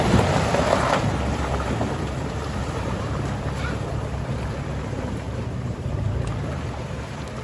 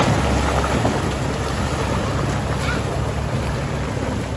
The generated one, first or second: first